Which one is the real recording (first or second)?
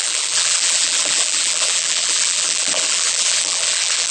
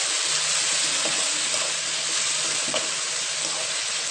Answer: second